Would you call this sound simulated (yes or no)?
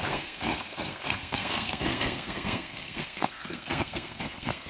yes